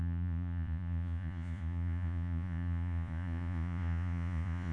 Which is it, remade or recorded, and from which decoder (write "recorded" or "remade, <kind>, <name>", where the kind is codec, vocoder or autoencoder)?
remade, vocoder, Vocos